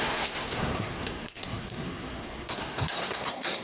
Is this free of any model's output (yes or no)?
no